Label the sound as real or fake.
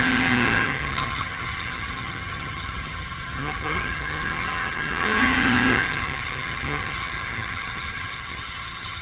fake